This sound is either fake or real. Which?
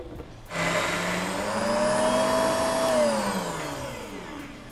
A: real